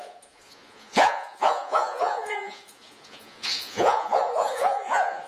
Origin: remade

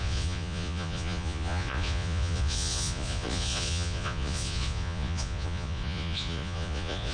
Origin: remade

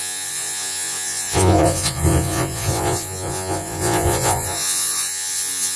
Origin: remade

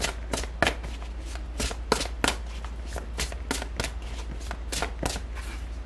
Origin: recorded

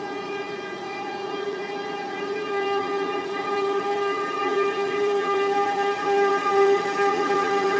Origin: remade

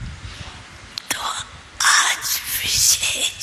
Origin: recorded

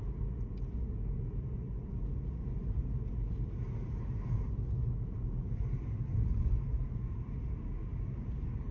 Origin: recorded